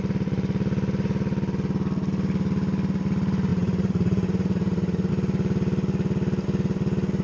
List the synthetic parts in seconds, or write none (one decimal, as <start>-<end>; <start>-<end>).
3.5-5.1